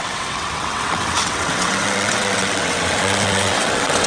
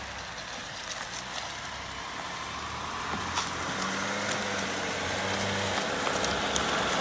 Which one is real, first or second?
second